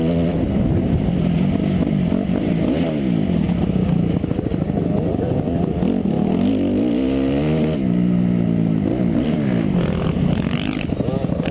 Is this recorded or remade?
recorded